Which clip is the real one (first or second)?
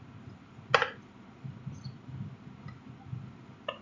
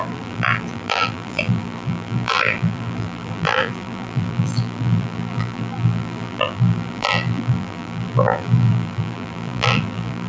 first